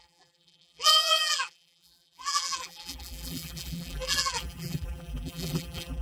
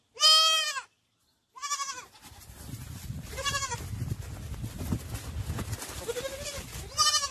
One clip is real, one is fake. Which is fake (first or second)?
first